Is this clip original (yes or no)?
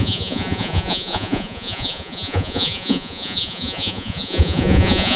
no